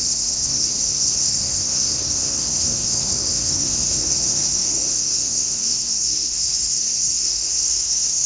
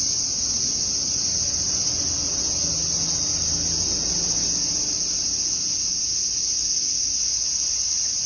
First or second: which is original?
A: second